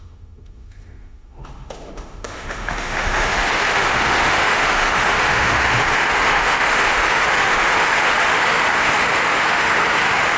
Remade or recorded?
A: remade